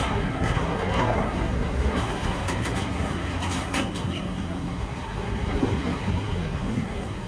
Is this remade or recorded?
remade